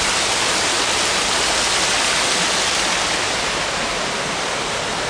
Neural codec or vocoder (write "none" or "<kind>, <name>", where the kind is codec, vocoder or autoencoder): none